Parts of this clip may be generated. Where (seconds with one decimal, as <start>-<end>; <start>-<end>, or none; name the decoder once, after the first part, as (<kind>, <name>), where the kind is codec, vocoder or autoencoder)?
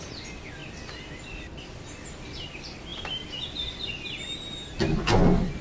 none